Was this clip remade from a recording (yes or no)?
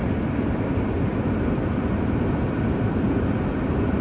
no